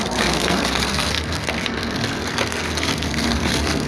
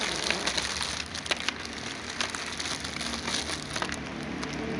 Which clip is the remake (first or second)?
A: first